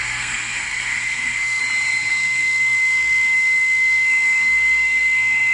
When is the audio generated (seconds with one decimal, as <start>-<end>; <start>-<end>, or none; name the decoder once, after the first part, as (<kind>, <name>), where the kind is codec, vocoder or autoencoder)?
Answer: 0.0-1.6 (codec, SNAC); 2.1-5.5